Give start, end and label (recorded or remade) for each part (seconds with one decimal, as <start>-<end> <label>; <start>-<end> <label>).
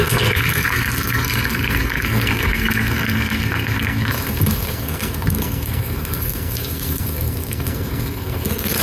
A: 0.0-8.8 remade